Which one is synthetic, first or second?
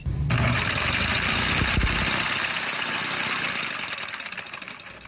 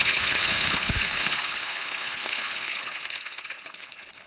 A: second